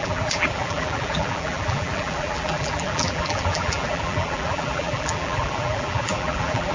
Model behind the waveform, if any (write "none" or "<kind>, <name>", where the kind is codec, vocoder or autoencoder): vocoder, BigVGAN v2